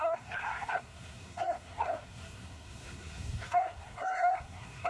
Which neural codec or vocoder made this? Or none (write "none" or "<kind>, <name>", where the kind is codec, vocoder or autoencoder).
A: codec, SNAC